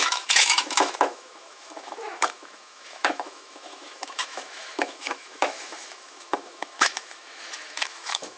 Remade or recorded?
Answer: remade